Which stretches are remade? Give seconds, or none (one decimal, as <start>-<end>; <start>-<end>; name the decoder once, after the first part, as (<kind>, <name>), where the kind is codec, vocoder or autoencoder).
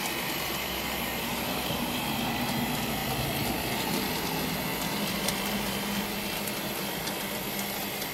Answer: 0.6-2.1 (codec, DAC)